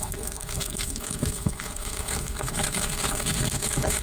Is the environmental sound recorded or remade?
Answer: remade